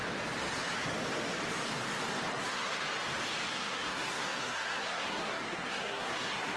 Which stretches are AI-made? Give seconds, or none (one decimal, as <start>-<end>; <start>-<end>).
2.3-2.8; 3.5-6.6